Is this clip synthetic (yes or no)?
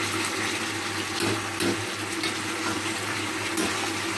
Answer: no